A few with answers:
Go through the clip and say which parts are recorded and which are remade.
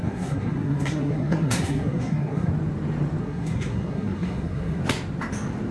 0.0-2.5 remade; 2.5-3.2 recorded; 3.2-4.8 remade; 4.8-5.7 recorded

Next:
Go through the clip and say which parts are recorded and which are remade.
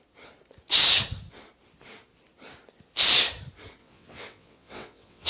0.0-3.8 recorded; 3.8-5.3 remade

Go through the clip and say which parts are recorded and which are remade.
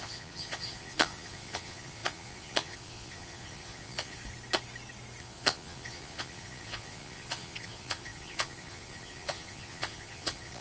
0.0-4.2 remade; 4.2-5.2 recorded; 5.2-10.6 remade